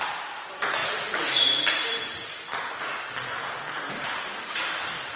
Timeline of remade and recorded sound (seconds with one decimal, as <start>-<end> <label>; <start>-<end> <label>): 0.0-0.8 remade; 0.8-3.9 recorded; 3.9-5.2 remade